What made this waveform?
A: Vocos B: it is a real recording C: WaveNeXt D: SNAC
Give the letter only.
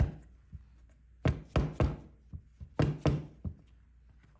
B